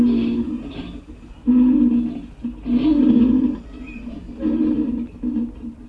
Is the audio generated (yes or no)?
no